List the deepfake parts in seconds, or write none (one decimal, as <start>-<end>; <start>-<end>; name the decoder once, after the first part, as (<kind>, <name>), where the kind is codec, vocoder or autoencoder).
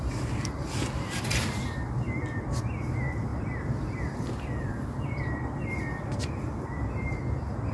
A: none